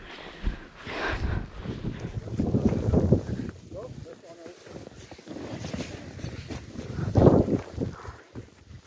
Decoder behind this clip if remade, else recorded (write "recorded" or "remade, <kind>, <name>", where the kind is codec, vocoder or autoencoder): recorded